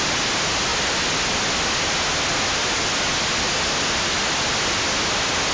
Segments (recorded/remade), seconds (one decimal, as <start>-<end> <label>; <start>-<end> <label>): 0.0-5.5 recorded